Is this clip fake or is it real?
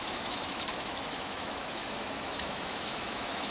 fake